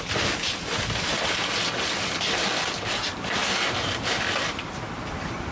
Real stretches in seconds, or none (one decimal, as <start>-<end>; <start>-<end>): 0.0-3.4; 4.8-5.5